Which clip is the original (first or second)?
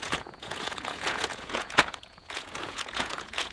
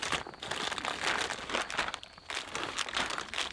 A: second